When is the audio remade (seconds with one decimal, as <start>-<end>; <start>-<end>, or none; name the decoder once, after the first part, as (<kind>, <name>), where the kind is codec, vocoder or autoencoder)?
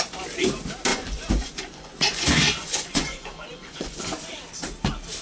0.9-4.0 (vocoder, Vocos)